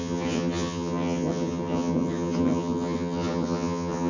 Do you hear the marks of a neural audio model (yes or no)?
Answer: yes